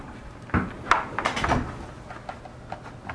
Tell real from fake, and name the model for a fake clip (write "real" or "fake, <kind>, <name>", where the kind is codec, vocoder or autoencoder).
real